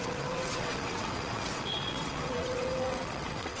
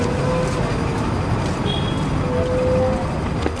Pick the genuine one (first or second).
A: second